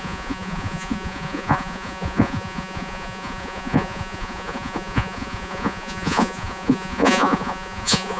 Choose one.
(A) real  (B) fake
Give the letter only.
B